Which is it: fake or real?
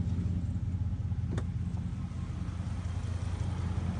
real